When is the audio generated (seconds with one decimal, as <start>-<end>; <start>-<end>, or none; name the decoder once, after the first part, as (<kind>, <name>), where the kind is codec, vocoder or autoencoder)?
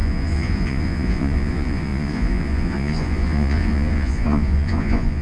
0.0-5.2 (vocoder, Vocos)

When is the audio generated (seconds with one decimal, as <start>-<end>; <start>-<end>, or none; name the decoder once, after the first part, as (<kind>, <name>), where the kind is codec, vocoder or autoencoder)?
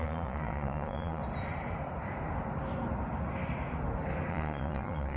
0.0-1.2 (vocoder, Vocos); 4.3-5.2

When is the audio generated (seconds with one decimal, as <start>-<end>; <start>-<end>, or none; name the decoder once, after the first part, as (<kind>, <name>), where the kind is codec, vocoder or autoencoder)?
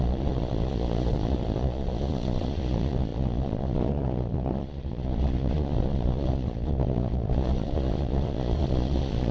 0.0-9.3 (vocoder, Vocos)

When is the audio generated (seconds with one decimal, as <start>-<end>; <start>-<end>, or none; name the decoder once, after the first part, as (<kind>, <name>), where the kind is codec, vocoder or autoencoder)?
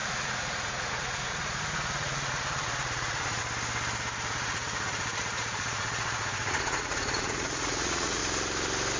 0.0-3.4 (vocoder, Vocos); 4.3-8.2